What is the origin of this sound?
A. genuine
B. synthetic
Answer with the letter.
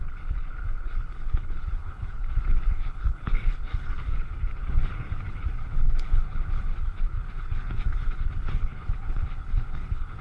B